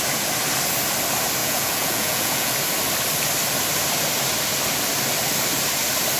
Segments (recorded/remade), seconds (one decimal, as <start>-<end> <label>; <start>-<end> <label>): 0.0-1.4 recorded; 1.4-2.5 remade; 2.5-6.2 recorded